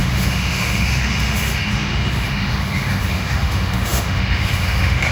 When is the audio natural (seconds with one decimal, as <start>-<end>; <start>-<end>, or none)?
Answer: none